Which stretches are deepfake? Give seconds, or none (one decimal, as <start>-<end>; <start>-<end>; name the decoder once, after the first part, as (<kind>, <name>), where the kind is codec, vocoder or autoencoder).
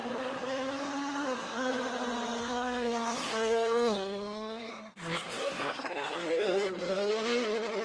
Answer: 0.0-1.7 (codec, SNAC); 2.4-7.1